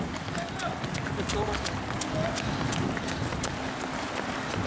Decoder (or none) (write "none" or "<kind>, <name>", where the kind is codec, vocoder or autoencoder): none